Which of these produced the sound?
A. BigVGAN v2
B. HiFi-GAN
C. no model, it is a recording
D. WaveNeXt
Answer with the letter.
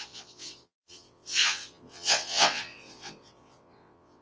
D